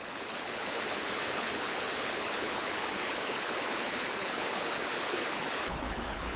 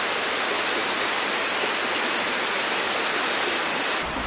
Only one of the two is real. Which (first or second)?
second